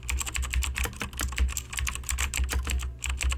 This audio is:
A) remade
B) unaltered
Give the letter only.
B